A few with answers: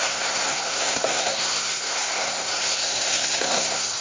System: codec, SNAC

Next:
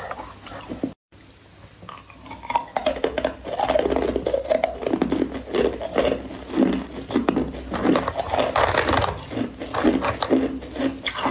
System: none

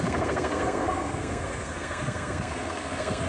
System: codec, SNAC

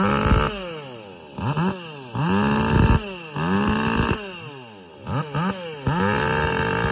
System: none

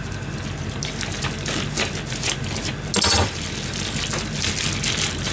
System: none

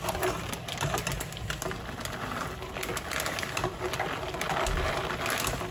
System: none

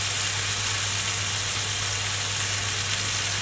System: none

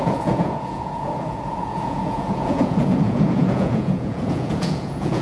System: vocoder, Vocos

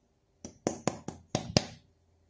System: none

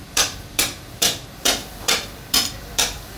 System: vocoder, BigVGAN v2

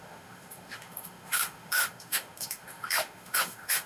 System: autoencoder, DAC-VAE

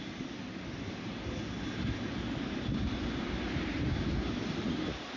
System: none